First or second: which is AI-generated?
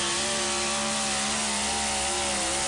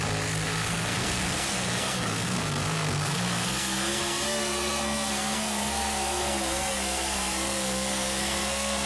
second